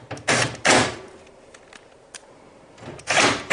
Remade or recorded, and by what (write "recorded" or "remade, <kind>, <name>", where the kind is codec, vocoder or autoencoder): recorded